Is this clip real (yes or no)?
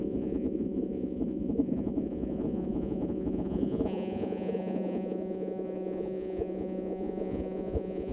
no